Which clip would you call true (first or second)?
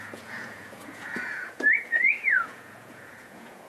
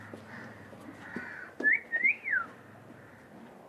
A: second